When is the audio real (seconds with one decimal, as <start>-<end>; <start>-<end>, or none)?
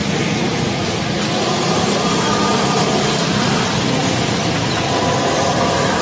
0.0-6.0